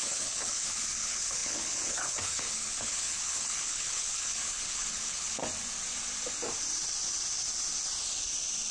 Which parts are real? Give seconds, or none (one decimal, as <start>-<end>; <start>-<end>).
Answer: 5.4-8.7